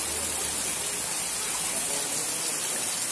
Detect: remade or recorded recorded